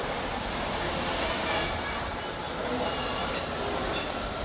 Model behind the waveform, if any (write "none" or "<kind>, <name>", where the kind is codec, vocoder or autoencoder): none